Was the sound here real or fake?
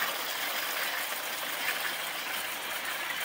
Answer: real